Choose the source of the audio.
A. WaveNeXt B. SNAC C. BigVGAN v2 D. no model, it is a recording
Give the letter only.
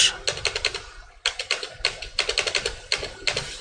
D